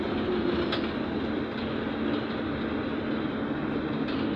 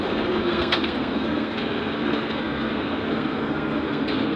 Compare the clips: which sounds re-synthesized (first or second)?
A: second